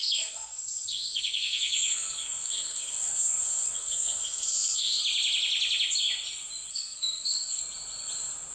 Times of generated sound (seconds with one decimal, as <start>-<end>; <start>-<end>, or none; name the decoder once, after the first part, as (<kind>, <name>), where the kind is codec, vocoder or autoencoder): 0.0-5.0 (codec, SNAC); 6.7-7.6